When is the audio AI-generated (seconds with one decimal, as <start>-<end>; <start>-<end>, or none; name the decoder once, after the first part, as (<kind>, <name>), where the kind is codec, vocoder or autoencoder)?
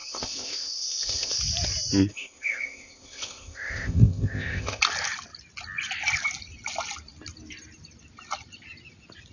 0.0-1.4 (codec, ZipCodec); 2.1-4.8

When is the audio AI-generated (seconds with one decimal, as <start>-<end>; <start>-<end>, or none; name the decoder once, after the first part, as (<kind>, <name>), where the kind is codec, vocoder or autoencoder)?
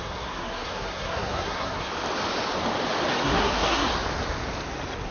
0.0-1.9 (codec, SNAC); 3.2-3.9